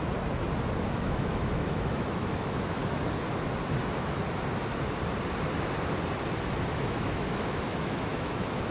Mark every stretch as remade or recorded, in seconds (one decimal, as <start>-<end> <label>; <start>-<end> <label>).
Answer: 0.0-0.8 recorded; 0.8-2.8 remade; 2.8-6.7 recorded; 6.7-8.7 remade